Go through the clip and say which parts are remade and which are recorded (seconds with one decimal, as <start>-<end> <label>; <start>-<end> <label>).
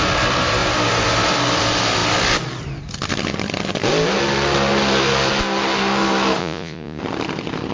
0.0-6.4 recorded; 6.4-7.0 remade; 7.0-7.7 recorded